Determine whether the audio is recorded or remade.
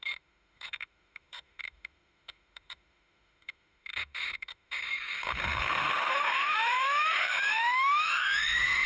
remade